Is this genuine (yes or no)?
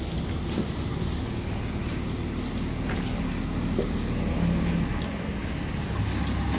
yes